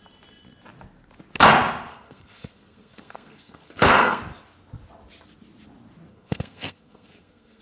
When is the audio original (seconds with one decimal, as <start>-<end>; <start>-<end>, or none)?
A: 0.0-1.9; 4.2-6.1